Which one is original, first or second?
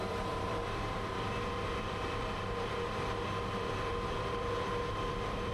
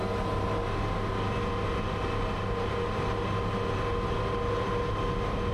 second